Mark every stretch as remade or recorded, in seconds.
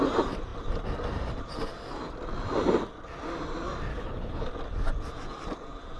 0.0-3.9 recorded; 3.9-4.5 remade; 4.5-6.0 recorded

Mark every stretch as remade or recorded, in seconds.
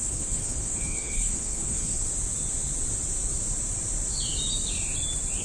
0.0-2.0 remade; 2.0-5.4 recorded